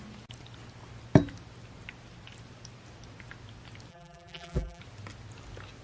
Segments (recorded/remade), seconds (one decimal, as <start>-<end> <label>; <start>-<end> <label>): 0.0-3.9 recorded; 3.9-4.8 remade; 4.8-5.8 recorded